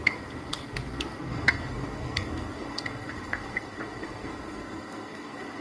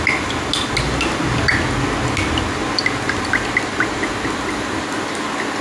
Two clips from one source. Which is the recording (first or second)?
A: second